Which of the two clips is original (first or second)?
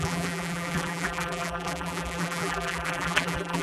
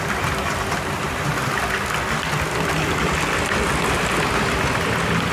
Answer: second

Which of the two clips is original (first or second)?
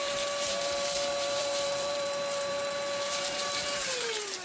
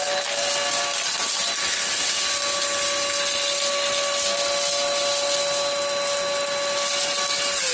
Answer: second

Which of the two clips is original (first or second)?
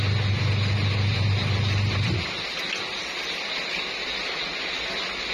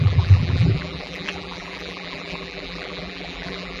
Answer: first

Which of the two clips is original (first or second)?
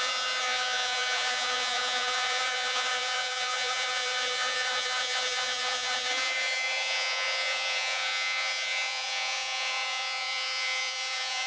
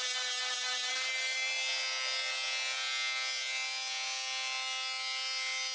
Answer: second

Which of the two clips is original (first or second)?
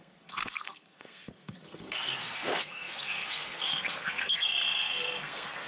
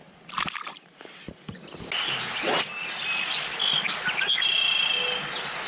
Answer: second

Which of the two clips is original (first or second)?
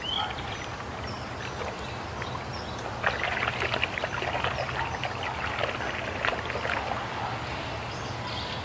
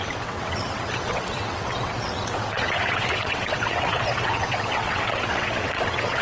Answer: first